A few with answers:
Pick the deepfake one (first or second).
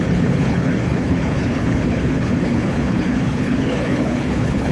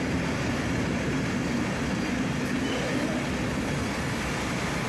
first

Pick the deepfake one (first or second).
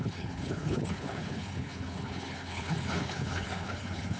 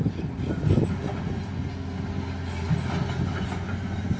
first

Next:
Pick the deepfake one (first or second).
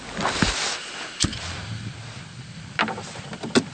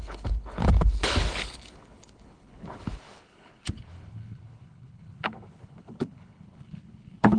second